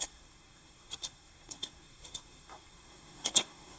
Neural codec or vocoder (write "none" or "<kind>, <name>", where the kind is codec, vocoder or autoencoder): codec, SNAC